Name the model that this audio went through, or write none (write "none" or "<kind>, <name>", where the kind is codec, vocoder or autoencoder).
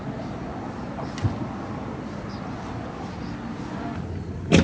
none